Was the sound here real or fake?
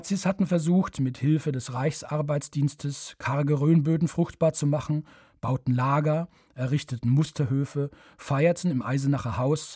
real